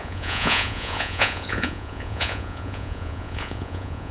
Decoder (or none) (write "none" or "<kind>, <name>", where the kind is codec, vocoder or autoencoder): vocoder, Vocos